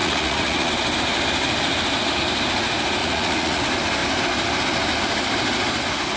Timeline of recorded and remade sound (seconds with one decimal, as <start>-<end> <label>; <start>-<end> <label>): 0.0-0.7 remade; 0.7-3.0 recorded; 3.0-3.6 remade; 3.6-6.2 recorded